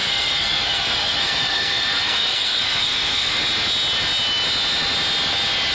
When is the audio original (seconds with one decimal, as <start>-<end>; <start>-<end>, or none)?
3.4-5.7